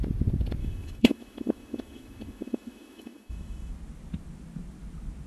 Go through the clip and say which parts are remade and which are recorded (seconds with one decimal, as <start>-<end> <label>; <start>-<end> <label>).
0.0-0.6 recorded; 0.6-3.7 remade; 3.7-5.3 recorded

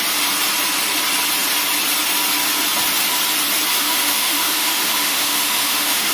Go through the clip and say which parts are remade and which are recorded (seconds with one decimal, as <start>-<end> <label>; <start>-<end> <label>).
0.0-3.7 recorded; 3.7-6.1 remade

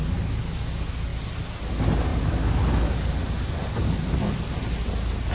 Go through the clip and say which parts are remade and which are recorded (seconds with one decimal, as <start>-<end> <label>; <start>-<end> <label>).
0.0-5.3 recorded

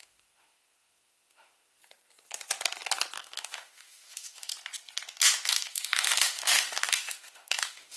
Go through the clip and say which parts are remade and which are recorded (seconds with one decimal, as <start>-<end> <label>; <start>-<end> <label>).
0.0-1.8 remade; 1.8-3.2 recorded; 3.2-4.5 remade; 4.5-5.4 recorded; 5.4-8.0 remade

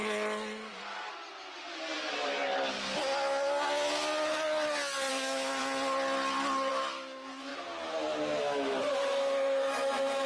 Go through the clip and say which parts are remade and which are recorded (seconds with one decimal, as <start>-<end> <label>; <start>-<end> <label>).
0.0-5.1 recorded; 5.1-5.6 remade; 5.6-6.7 recorded; 6.7-7.5 remade; 7.5-8.4 recorded; 8.4-10.3 remade

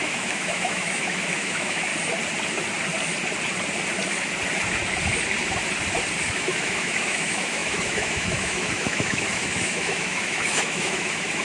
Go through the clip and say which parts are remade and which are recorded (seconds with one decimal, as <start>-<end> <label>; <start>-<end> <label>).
0.0-1.9 remade; 1.9-6.2 recorded; 6.2-11.4 remade

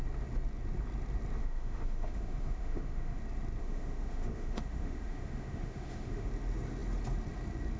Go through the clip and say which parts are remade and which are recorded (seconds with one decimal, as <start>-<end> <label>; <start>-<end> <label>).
0.0-1.4 recorded; 1.4-3.2 remade; 3.2-3.6 recorded; 3.6-6.3 remade; 6.3-7.8 recorded